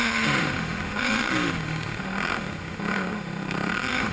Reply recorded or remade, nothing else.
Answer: remade